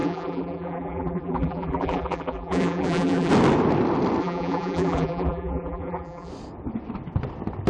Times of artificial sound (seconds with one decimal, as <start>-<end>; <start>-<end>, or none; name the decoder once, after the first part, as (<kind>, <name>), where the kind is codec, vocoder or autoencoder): 0.0-3.3 (vocoder, BigVGAN v2); 4.2-6.3